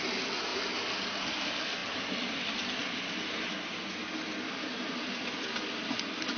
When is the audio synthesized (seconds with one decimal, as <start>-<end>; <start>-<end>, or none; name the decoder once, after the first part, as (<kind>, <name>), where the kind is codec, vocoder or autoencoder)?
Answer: none